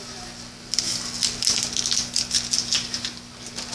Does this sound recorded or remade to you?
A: recorded